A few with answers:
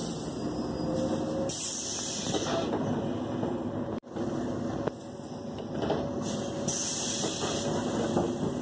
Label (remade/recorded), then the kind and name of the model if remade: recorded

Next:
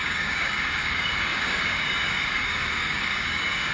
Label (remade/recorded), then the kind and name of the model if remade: remade, codec, DAC